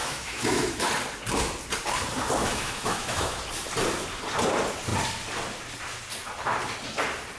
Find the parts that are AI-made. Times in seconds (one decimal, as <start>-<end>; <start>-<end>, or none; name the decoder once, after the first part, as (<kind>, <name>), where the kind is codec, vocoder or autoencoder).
0.0-0.9 (autoencoder, DAC-VAE); 2.4-3.4